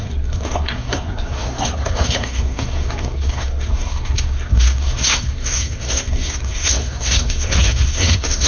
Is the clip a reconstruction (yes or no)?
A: yes